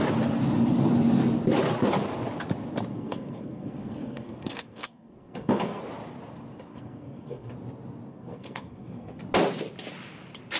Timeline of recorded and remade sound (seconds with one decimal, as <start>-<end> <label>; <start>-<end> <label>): 0.0-2.9 recorded; 2.9-5.8 remade; 5.8-6.7 recorded; 6.7-7.5 remade; 7.5-8.1 recorded; 8.1-9.2 remade; 9.2-10.6 recorded